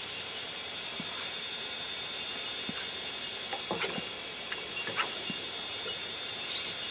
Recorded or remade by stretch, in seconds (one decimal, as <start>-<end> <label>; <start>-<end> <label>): 0.0-6.9 recorded